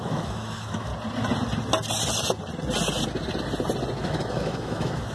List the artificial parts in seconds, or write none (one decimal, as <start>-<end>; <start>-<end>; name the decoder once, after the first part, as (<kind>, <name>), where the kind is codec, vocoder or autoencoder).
0.0-0.9 (autoencoder, DAC-VAE); 4.0-5.1

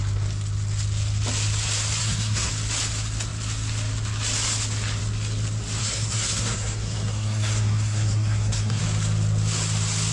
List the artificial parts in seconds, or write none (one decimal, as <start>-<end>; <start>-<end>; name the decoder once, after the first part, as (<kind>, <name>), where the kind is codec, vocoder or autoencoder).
2.0-2.5 (codec, SNAC); 5.8-8.8

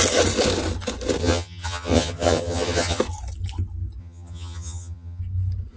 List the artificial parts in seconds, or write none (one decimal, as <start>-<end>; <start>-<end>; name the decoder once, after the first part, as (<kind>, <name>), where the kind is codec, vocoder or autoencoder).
1.2-3.0 (vocoder, HiFi-GAN); 4.0-5.2

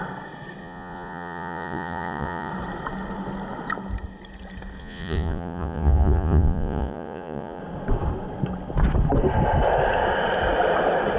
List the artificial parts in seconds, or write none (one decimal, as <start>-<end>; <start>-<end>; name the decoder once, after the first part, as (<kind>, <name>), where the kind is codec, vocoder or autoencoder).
0.6-2.5 (vocoder, Vocos); 4.8-7.6

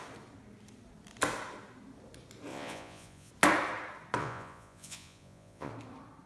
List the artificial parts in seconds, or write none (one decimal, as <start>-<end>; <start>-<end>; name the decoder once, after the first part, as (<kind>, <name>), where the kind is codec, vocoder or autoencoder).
2.5-3.3 (vocoder, Vocos); 4.2-5.7

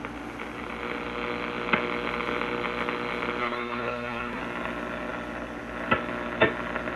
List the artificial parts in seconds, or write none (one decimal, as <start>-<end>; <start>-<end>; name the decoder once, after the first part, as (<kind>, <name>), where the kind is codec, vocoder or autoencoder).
3.4-4.4 (codec, SNAC)

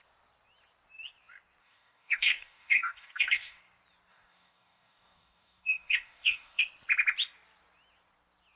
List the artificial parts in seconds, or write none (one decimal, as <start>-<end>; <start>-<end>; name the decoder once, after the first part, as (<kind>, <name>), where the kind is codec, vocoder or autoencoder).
1.6-3.6 (codec, DAC); 4.1-6.6

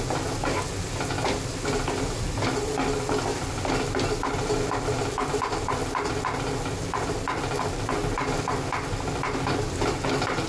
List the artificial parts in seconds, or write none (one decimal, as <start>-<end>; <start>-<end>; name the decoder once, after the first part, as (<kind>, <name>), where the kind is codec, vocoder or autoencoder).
none